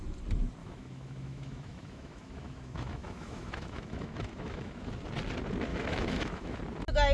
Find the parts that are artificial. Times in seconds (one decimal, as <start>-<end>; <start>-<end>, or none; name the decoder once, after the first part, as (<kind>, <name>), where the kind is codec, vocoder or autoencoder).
0.6-4.9 (autoencoder, DAC-VAE); 5.7-6.6